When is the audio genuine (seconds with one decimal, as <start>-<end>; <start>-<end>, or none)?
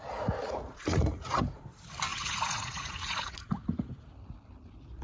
0.0-0.4; 1.6-2.1; 3.9-5.0